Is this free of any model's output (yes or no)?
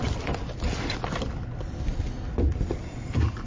yes